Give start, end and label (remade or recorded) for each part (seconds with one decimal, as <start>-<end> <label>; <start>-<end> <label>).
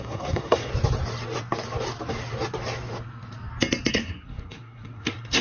0.0-0.7 remade; 0.7-3.9 recorded; 3.9-5.4 remade